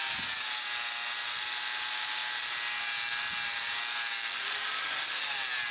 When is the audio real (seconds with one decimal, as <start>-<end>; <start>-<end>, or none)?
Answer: 0.0-5.7